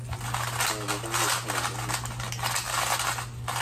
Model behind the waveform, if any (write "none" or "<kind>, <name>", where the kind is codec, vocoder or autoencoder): none